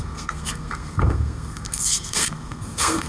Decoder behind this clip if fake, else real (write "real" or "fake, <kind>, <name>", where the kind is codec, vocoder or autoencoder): fake, codec, SNAC